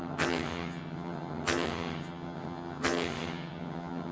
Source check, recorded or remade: remade